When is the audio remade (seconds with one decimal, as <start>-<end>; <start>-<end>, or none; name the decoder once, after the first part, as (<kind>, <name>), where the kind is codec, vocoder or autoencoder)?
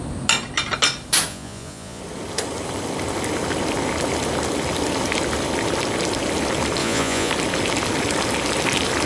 1.3-2.0 (vocoder, Vocos); 6.8-7.3